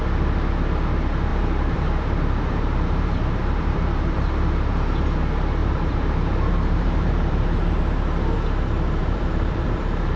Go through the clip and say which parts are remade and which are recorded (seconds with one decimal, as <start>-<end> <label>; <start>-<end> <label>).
0.0-1.3 recorded; 1.3-4.3 remade; 4.3-5.6 recorded; 5.6-7.8 remade; 7.8-9.0 recorded; 9.0-10.2 remade